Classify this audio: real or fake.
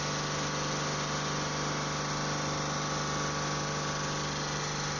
real